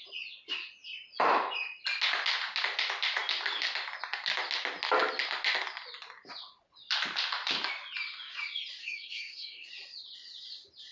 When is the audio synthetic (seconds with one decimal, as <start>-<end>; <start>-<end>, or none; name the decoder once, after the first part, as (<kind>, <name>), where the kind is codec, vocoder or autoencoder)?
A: 8.8-9.7 (codec, SNAC)